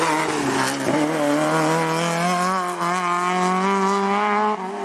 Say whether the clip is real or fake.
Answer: real